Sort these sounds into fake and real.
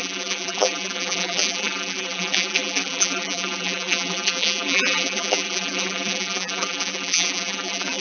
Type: fake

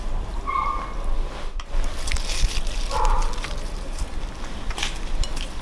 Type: fake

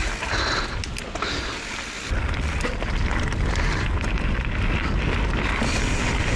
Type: real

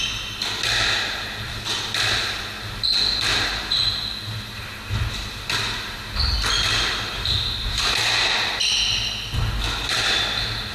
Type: real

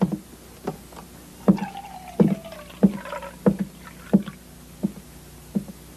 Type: real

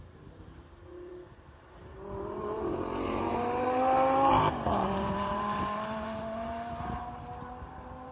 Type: fake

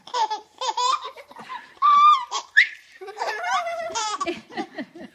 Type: fake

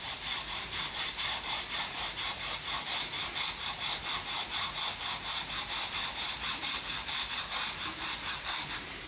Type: fake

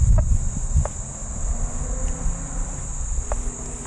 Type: real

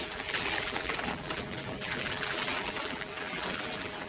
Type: fake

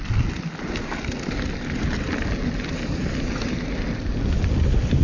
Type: real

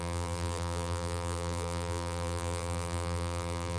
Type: fake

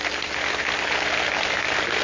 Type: real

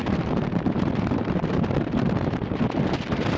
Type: fake